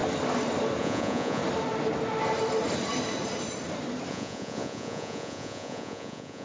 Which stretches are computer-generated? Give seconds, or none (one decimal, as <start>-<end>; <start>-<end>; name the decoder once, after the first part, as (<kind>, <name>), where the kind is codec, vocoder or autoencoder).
0.8-1.4 (vocoder, Vocos); 4.1-6.4

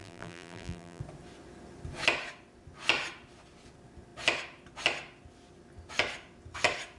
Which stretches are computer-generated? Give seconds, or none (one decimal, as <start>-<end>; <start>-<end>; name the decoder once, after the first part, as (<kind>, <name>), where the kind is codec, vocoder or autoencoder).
0.0-1.0 (vocoder, BigVGAN v2)

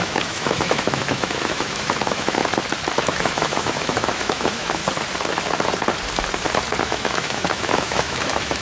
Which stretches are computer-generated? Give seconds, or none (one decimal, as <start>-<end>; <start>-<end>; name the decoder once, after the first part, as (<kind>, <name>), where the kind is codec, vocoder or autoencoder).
0.0-2.4 (autoencoder, DAC-VAE); 3.0-4.8; 6.8-8.6

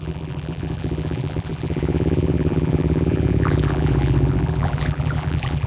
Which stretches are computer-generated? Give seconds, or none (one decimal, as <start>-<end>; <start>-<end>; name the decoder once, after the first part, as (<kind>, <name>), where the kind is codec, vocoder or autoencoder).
0.0-5.7 (vocoder, BigVGAN v2)

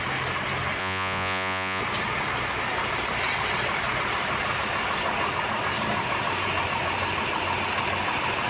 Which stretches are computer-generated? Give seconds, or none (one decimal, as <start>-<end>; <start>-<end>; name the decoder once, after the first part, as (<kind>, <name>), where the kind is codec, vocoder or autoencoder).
0.8-1.8 (vocoder, Vocos)

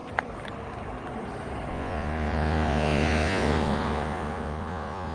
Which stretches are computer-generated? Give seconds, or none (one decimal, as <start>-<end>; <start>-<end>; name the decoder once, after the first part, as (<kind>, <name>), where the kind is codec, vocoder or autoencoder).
1.7-5.1 (vocoder, Vocos)

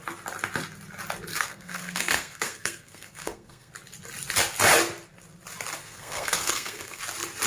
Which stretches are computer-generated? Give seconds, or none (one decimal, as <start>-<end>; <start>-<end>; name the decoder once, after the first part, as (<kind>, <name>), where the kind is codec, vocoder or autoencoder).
1.3-3.7 (codec, SNAC); 5.8-7.0